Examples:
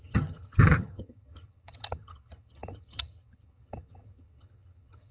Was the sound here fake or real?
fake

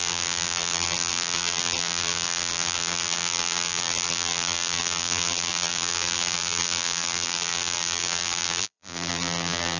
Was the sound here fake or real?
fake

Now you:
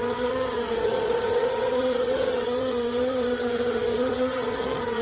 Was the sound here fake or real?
fake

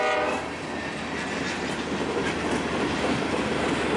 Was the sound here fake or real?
real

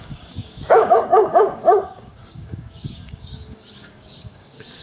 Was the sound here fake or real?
fake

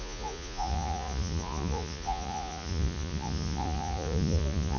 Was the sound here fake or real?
fake